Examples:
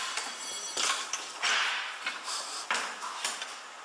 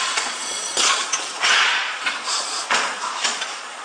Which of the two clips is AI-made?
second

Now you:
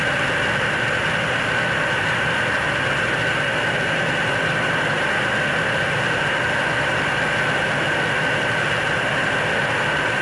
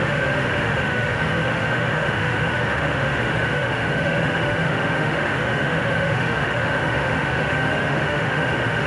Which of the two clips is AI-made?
second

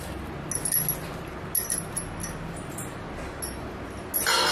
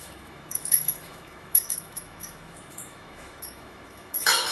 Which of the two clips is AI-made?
second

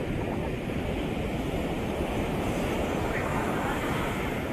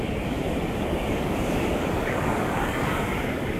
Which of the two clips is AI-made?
second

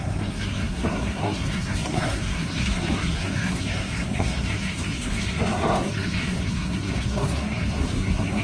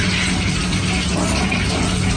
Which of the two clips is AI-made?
first